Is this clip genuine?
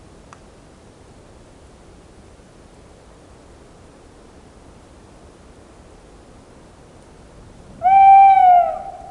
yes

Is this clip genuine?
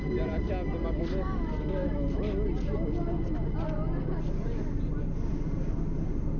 yes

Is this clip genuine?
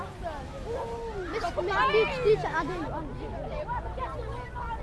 yes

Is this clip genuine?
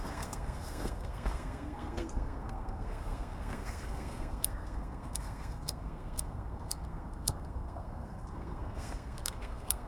no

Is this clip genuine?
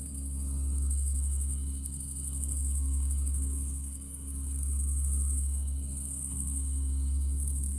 no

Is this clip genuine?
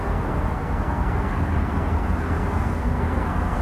no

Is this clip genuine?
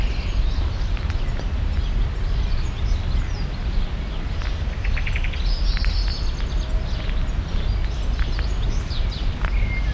yes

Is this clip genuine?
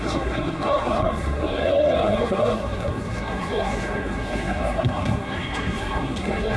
no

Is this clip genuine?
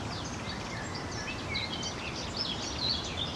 yes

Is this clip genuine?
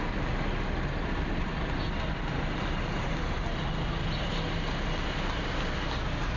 yes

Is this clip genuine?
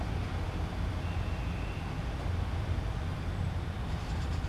yes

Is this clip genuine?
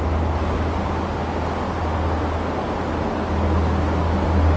yes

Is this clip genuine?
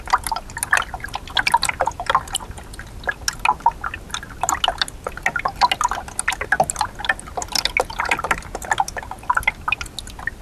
yes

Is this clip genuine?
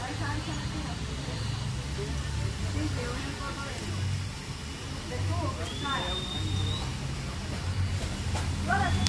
yes